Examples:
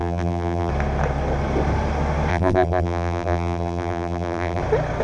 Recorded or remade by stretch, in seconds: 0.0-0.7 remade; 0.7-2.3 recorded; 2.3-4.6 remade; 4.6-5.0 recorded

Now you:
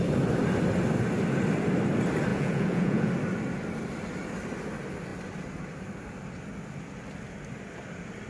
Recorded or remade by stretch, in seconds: 0.0-2.3 recorded; 2.3-3.1 remade; 3.1-8.3 recorded

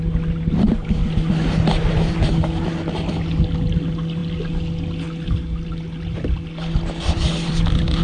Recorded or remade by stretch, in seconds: 0.0-8.0 recorded

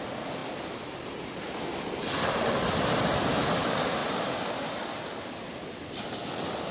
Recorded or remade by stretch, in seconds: 0.0-4.0 recorded; 4.0-5.6 remade; 5.6-6.7 recorded